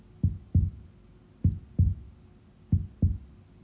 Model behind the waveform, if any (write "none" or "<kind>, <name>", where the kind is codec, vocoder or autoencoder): none